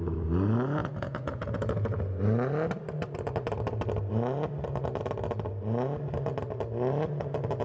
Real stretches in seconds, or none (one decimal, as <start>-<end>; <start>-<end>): 0.0-0.8; 2.0-7.6